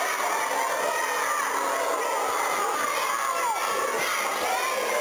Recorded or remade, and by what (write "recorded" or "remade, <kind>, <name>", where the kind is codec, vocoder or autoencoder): recorded